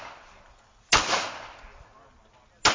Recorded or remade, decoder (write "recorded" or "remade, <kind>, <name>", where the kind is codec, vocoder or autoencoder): recorded